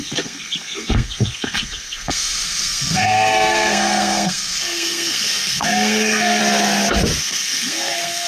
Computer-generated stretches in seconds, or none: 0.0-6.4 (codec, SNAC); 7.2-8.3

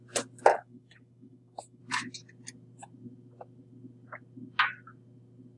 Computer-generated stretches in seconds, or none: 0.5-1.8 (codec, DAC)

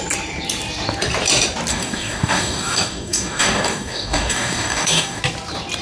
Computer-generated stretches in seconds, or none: 1.7-5.2 (codec, DAC)